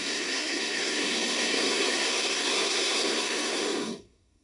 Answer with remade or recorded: remade